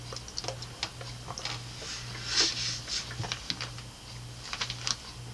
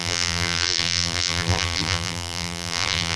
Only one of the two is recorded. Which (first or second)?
first